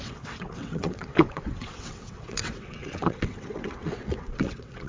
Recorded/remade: remade